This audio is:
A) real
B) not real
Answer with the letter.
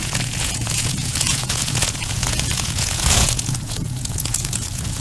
B